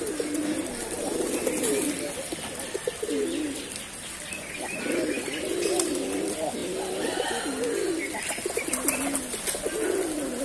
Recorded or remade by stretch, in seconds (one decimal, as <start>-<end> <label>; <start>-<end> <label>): 0.0-10.4 recorded